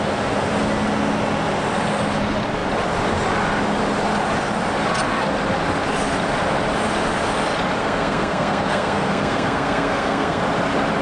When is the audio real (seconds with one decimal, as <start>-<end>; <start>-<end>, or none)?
0.0-7.8; 10.4-11.0